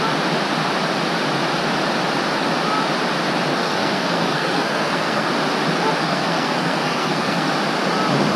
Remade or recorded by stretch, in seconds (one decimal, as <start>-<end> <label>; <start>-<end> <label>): 0.0-3.5 recorded; 3.5-5.3 remade; 5.3-6.0 recorded; 6.0-7.5 remade; 7.5-8.4 recorded